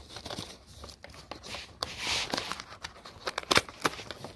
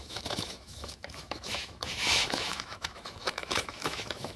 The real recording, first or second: first